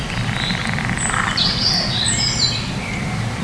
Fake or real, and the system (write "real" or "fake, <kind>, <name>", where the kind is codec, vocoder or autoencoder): real